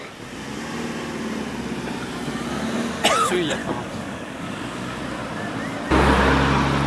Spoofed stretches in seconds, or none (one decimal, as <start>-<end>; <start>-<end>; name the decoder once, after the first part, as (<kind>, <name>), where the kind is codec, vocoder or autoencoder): 3.6-5.0 (codec, DAC)